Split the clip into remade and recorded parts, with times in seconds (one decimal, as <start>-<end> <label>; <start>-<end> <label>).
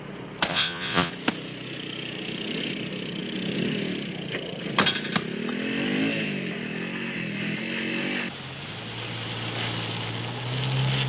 0.0-0.5 recorded; 0.5-1.1 remade; 1.1-11.1 recorded